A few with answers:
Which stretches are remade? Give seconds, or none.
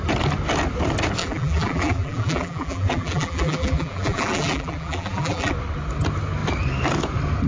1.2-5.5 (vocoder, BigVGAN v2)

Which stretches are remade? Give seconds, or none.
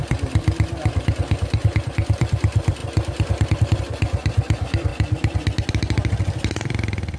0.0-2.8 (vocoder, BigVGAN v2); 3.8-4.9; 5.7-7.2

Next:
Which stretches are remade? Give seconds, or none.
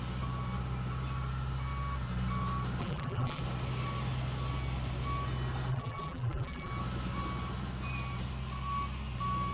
2.8-3.4 (vocoder, BigVGAN v2); 5.7-6.7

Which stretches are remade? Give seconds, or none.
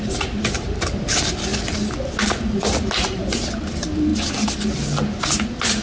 none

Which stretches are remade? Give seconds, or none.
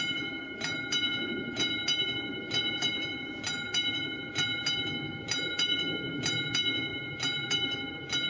0.0-8.3 (vocoder, BigVGAN v2)